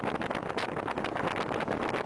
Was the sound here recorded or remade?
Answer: recorded